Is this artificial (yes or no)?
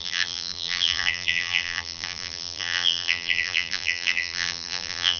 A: yes